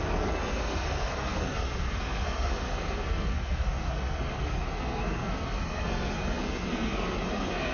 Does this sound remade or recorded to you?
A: remade